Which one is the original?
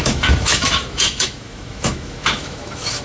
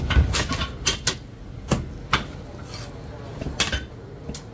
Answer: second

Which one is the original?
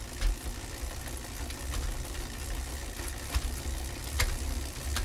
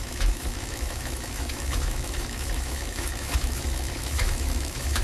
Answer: first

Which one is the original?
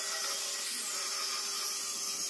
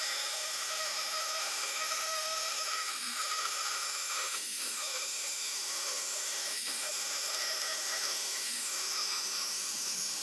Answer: first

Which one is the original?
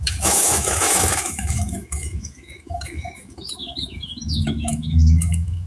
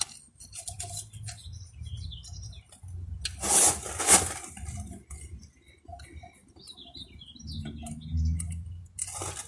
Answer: second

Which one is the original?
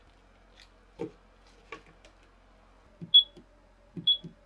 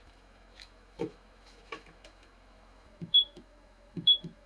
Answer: first